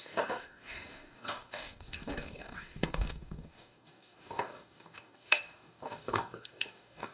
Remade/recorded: remade